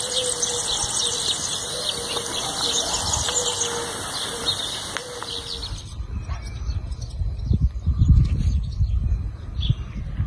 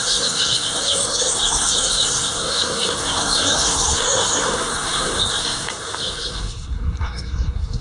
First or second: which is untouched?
first